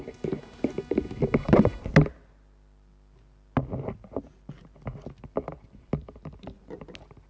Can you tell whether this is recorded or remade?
recorded